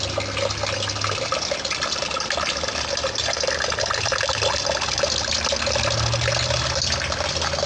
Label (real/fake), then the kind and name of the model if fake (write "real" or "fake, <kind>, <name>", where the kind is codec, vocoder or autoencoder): real